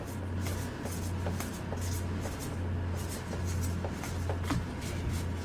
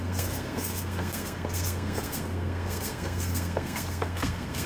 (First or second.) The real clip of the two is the first